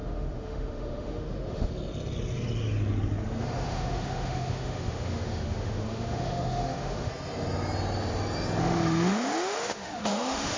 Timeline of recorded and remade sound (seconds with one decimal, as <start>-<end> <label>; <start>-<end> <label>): 0.0-1.7 remade; 1.7-3.4 recorded; 3.4-7.1 remade; 7.1-8.6 recorded; 8.6-10.6 remade